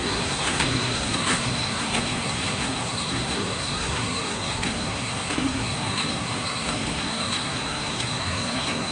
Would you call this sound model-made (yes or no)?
yes